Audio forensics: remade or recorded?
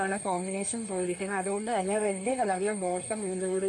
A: remade